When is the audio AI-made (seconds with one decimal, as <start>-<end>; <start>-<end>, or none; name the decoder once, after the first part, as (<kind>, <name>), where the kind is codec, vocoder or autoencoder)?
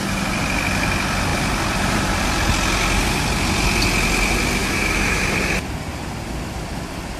4.6-5.2 (autoencoder, DAC-VAE)